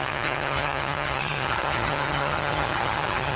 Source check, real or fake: fake